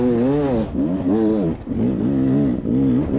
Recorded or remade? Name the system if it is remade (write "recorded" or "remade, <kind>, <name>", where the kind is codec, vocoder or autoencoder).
recorded